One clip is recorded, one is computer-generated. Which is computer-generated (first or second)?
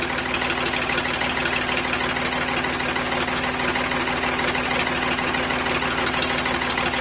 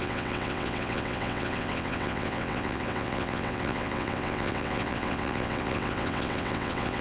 second